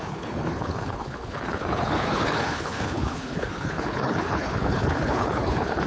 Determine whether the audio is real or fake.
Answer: fake